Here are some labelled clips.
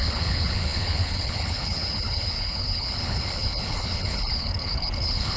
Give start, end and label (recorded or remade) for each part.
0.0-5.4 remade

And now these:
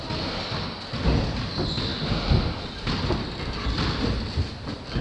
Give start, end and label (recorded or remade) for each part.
0.0-5.0 recorded

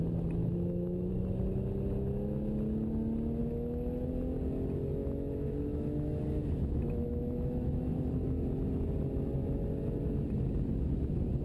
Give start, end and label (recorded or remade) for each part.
0.0-0.4 recorded; 0.4-1.1 remade; 1.1-3.4 recorded; 3.4-4.1 remade; 4.1-5.0 recorded; 5.0-8.1 remade; 8.1-11.4 recorded

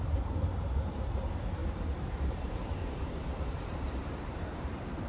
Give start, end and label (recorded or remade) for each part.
0.0-1.6 remade; 1.6-2.1 recorded; 2.1-2.8 remade; 2.8-3.5 recorded; 3.5-5.1 remade

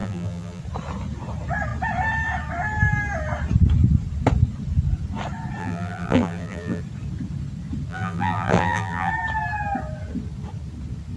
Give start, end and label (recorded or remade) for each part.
0.0-0.6 remade; 0.6-5.6 recorded; 5.6-6.8 remade; 6.8-7.9 recorded; 7.9-9.1 remade; 9.1-11.2 recorded

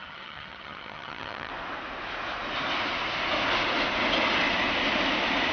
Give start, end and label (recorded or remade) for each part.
0.0-1.5 remade; 1.5-5.5 recorded

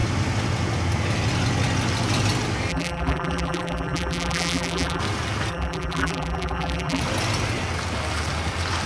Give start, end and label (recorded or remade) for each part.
0.0-2.7 recorded; 2.7-5.0 remade; 5.0-5.5 recorded; 5.5-7.0 remade; 7.0-8.9 recorded